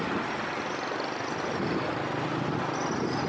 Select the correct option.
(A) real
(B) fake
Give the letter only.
A